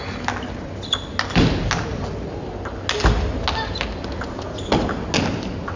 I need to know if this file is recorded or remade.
recorded